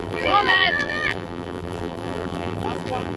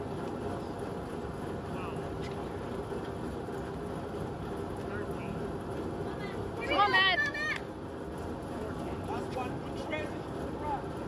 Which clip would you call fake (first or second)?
first